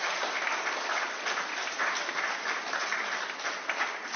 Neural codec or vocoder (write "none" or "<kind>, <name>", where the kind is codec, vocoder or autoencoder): none